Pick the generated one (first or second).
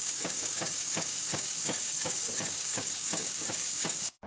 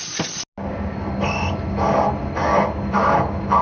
first